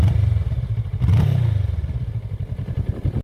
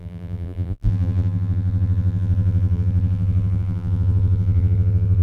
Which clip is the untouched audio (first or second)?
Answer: first